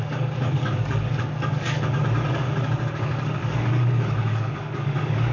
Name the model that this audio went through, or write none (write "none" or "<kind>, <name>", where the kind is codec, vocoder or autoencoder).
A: codec, DAC